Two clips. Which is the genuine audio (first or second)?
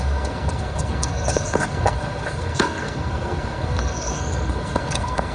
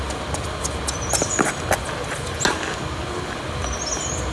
second